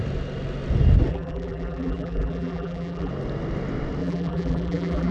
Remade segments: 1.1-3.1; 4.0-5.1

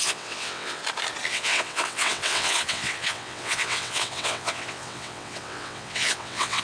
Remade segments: 0.0-0.8; 1.3-6.6

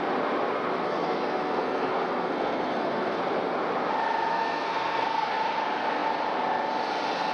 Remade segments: 0.8-3.2; 4.3-5.3

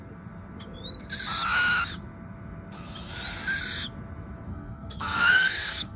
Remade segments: 4.5-6.0